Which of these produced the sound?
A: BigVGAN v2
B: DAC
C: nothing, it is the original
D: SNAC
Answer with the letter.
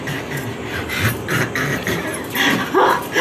C